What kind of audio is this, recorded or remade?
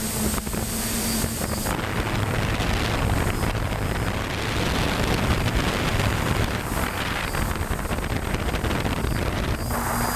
recorded